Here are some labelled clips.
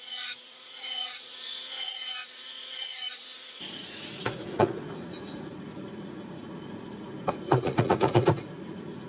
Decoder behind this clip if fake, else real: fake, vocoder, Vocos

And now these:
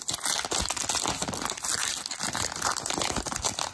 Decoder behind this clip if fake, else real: real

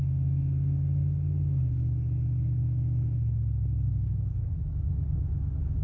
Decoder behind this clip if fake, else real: fake, codec, DAC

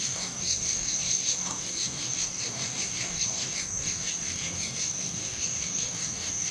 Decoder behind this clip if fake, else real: fake, codec, DAC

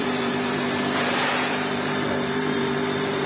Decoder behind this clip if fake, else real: fake, vocoder, BigVGAN v2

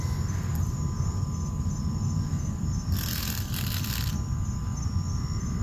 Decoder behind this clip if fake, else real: real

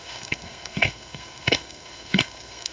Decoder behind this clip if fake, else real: fake, codec, SNAC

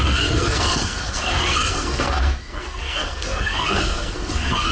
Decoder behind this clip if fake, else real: fake, codec, SNAC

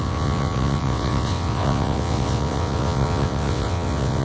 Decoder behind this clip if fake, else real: fake, vocoder, WaveNeXt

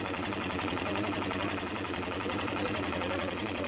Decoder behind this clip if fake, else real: fake, vocoder, Vocos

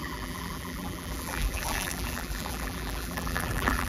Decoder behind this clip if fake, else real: fake, vocoder, BigVGAN v2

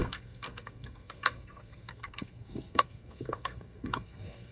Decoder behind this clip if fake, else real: fake, codec, SNAC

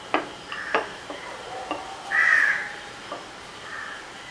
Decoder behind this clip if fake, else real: fake, vocoder, BigVGAN v2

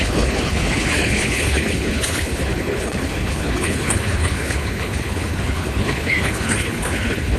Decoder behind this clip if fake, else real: fake, codec, HILCodec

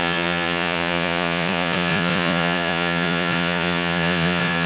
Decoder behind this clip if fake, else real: fake, vocoder, Vocos